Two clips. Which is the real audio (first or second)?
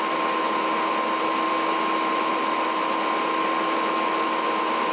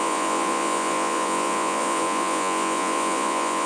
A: first